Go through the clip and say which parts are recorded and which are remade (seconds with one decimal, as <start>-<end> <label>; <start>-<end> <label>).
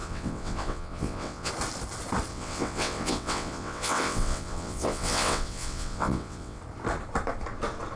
0.0-1.5 remade; 1.5-2.3 recorded; 2.3-6.6 remade; 6.6-8.0 recorded